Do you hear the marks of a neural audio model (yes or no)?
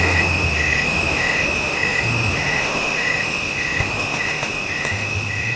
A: yes